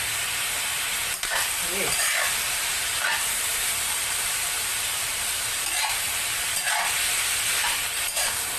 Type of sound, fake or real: fake